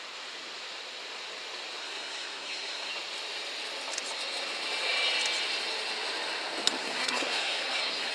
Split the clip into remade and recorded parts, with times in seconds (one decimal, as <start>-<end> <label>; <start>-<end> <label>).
0.0-1.8 recorded; 1.8-2.9 remade; 2.9-6.8 recorded; 6.8-8.1 remade